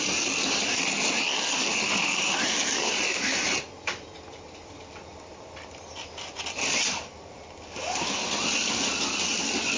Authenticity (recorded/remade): recorded